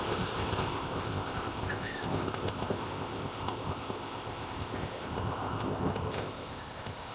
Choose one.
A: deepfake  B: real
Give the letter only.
A